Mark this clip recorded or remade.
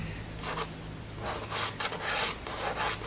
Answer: recorded